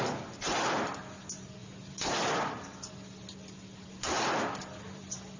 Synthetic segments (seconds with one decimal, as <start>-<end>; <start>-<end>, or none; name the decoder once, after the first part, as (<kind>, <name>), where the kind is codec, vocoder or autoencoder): none